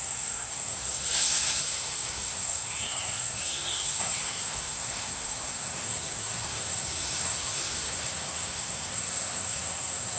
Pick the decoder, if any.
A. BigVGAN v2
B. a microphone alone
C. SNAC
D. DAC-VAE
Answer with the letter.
C